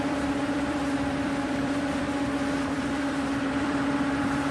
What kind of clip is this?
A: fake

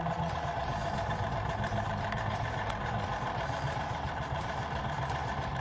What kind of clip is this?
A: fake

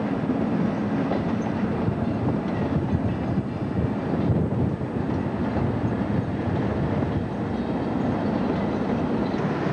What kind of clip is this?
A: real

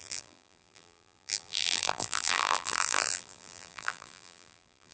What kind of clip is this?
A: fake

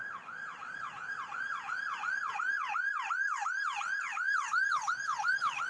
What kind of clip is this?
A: fake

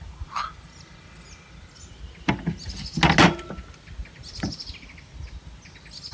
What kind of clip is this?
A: real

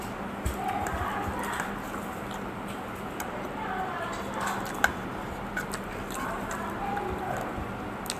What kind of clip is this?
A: real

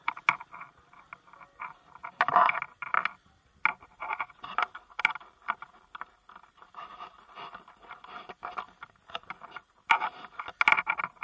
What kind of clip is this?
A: real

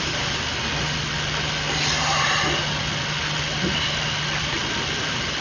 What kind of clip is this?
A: real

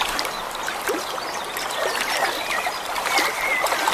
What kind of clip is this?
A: fake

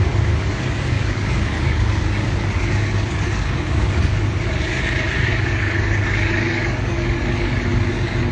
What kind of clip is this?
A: fake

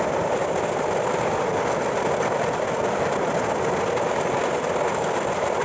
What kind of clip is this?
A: real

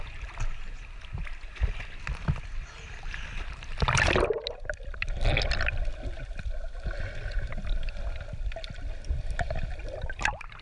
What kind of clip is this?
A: real